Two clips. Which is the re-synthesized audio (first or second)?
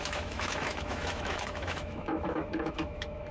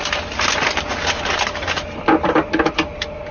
first